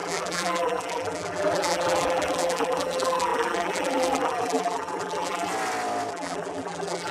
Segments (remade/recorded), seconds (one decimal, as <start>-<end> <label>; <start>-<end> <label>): 0.0-5.5 remade; 5.5-6.1 recorded; 6.1-7.1 remade